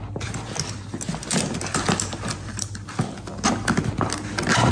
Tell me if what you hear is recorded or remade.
recorded